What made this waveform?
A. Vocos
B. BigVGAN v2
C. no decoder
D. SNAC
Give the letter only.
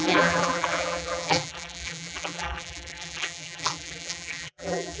B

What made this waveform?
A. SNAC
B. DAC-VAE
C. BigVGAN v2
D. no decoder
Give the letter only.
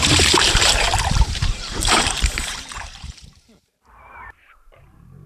C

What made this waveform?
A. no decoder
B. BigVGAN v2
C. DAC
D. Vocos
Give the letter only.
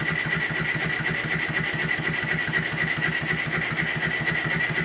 A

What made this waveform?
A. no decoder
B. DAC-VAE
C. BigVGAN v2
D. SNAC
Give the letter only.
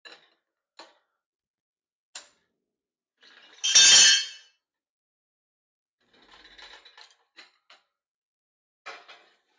A